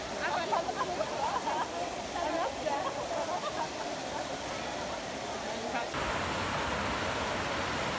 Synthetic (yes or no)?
no